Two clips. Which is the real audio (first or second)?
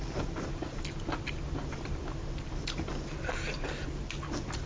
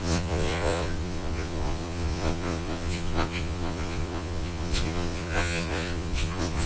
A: first